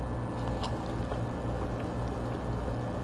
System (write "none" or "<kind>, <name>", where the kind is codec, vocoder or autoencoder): none